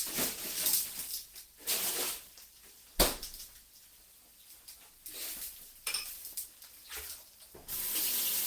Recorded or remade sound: recorded